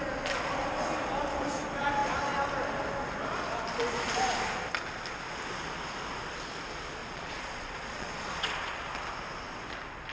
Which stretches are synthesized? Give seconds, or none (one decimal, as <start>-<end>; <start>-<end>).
7.0-8.9